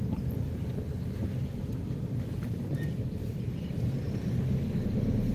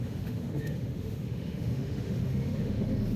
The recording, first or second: first